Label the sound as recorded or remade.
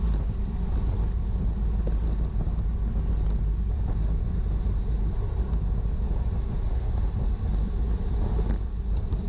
recorded